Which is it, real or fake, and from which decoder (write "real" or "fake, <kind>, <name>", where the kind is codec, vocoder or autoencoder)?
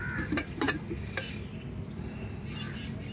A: real